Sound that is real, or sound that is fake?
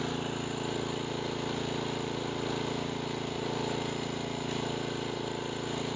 real